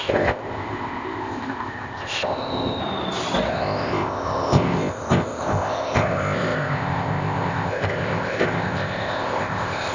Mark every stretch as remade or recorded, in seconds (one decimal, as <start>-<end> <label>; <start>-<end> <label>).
0.0-2.8 remade; 2.8-3.5 recorded; 3.5-9.9 remade